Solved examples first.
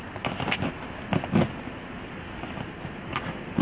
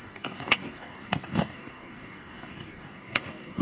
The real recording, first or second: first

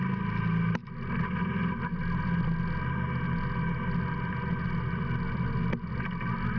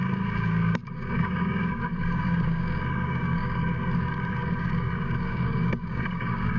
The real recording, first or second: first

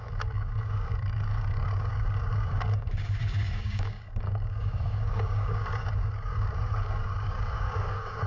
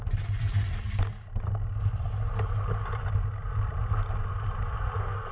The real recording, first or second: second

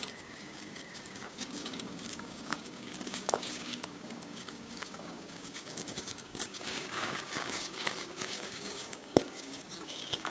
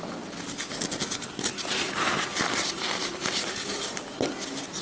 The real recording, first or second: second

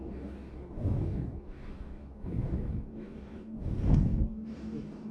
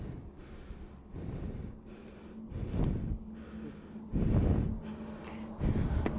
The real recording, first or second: second